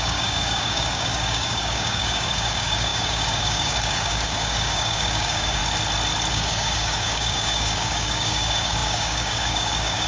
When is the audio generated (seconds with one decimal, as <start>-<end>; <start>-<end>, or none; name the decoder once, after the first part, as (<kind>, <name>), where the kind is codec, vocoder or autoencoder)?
0.0-5.6 (codec, DAC); 6.3-10.1